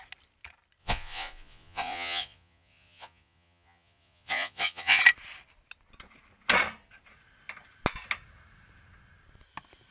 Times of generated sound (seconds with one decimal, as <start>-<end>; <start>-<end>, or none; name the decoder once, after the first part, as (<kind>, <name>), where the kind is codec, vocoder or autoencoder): 0.8-5.0 (vocoder, Vocos)